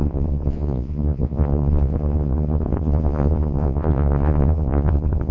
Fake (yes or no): yes